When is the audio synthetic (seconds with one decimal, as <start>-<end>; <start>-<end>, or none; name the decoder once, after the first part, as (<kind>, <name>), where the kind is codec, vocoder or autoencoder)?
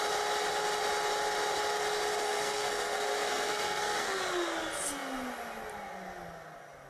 2.2-4.2 (codec, SNAC)